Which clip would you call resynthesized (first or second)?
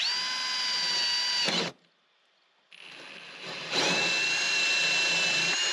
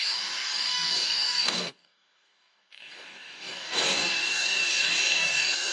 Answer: second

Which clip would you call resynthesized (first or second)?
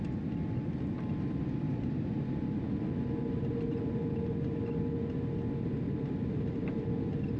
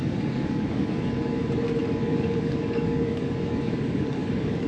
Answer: second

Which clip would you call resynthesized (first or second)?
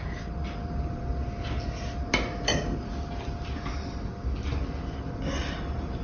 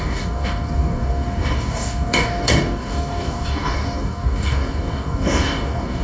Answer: second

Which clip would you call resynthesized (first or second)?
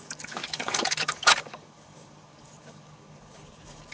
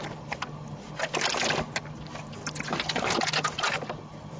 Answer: first